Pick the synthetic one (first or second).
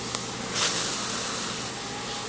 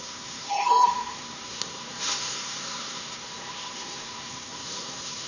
second